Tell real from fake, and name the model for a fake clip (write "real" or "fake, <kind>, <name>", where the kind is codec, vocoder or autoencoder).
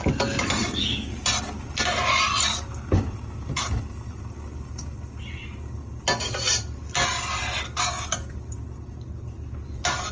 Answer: real